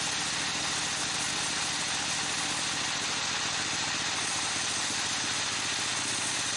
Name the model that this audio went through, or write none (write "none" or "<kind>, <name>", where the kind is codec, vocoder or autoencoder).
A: none